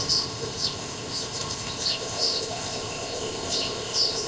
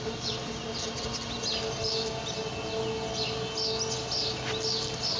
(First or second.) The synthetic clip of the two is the first